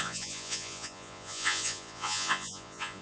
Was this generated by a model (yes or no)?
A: yes